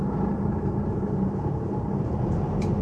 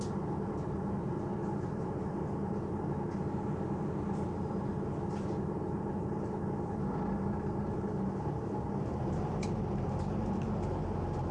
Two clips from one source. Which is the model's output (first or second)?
first